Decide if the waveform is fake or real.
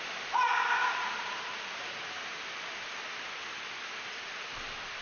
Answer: real